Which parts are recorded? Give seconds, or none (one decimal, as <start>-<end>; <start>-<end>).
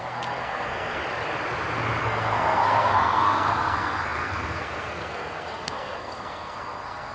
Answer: 1.0-2.0